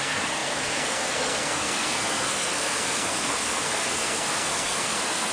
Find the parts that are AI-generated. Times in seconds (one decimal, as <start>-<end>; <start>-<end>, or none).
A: 0.0-5.3